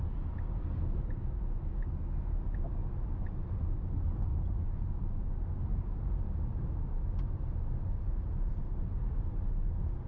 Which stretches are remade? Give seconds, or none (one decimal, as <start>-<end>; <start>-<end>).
4.3-8.1; 8.7-9.5

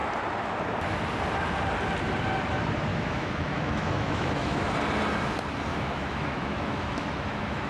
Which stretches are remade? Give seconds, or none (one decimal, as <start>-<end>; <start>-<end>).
2.9-4.7; 5.7-7.7

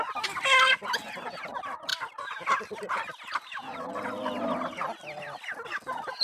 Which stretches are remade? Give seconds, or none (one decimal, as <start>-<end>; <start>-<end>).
1.9-4.4

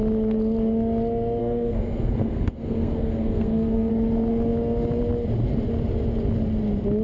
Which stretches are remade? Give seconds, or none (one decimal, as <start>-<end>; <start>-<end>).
1.4-3.9

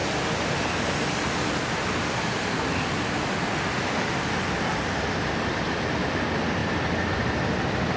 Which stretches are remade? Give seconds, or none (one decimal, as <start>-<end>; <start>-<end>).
none

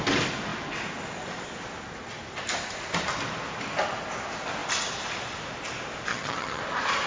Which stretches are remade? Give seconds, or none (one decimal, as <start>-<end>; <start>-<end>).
6.1-6.6

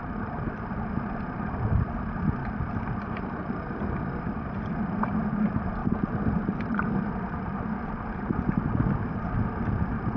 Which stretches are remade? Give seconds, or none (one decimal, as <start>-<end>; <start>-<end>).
2.4-4.0; 5.8-7.0